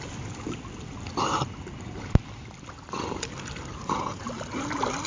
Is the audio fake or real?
real